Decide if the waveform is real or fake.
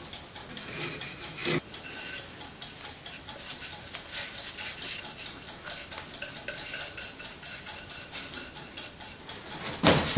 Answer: real